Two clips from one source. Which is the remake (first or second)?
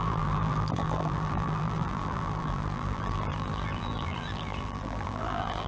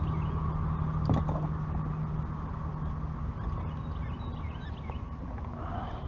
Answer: first